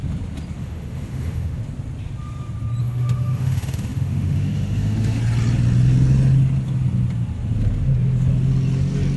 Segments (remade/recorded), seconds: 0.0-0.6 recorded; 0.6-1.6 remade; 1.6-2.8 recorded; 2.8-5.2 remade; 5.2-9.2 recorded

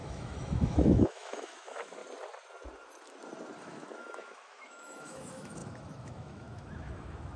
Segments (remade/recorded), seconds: 0.0-2.0 remade; 2.0-3.6 recorded; 3.6-7.4 remade

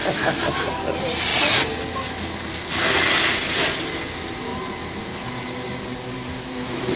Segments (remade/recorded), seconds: 0.0-0.8 remade; 0.8-6.3 recorded; 6.3-7.0 remade